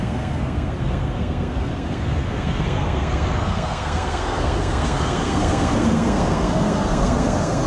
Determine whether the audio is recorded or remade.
remade